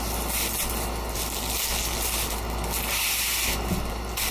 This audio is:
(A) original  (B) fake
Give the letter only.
A